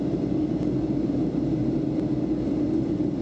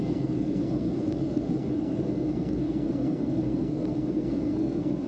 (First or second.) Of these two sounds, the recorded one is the first